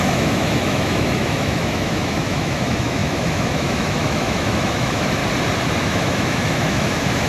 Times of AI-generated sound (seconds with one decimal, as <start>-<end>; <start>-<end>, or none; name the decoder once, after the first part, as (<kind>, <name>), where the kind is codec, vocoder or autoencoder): 0.0-5.2 (autoencoder, DAC-VAE); 5.8-7.3

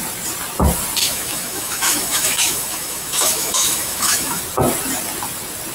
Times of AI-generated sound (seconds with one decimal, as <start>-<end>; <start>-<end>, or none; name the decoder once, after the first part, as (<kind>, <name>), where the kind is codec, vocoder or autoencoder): 1.0-4.4 (autoencoder, DAC-VAE)

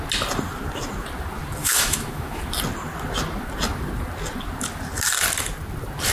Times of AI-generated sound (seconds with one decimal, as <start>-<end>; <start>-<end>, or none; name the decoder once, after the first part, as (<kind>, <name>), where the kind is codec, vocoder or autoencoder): 1.6-2.4 (autoencoder, DAC-VAE)

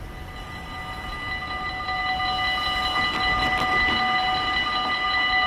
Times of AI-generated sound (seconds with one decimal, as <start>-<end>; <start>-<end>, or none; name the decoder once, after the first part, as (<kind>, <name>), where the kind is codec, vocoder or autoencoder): none

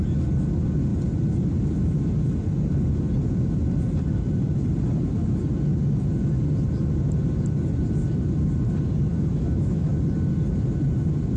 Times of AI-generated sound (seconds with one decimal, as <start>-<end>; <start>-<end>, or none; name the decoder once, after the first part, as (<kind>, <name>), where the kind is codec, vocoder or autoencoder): 9.1-9.9 (autoencoder, DAC-VAE)